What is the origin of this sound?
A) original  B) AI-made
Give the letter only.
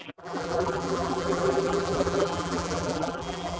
B